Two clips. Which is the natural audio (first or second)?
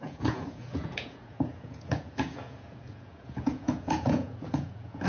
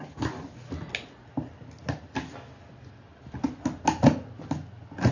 second